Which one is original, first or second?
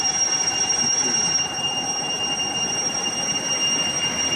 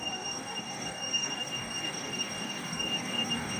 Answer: first